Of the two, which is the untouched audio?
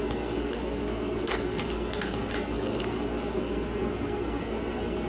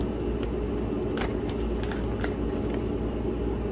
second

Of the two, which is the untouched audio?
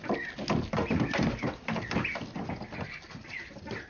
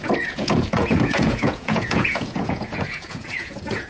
first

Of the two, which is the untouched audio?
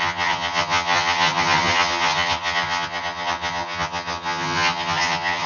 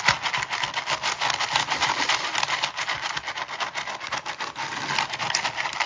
second